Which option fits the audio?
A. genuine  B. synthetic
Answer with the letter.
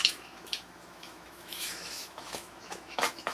B